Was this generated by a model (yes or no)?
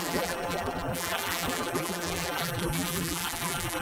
yes